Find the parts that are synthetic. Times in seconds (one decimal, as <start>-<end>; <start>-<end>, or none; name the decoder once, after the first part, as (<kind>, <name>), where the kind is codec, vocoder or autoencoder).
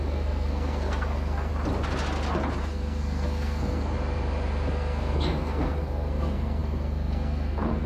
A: 0.0-1.5 (codec, SNAC); 2.6-3.9; 4.7-7.9